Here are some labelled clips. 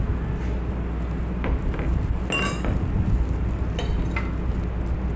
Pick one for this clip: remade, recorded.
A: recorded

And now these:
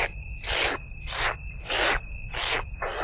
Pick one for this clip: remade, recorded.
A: recorded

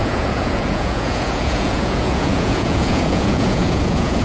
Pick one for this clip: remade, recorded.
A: remade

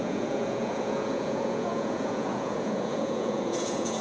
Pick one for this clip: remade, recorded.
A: remade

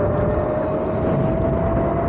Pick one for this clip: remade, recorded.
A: recorded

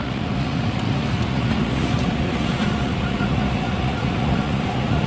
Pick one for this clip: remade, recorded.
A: remade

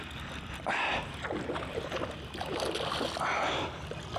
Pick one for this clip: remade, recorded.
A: recorded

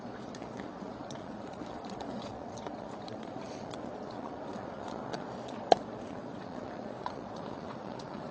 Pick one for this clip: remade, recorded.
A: remade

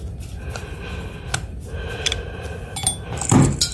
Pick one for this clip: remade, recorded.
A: recorded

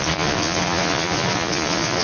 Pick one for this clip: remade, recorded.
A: remade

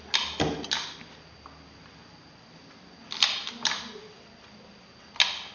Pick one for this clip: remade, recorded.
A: recorded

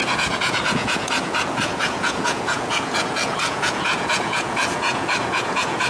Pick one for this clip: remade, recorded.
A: remade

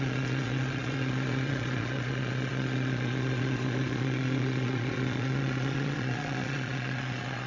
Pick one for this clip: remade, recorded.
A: remade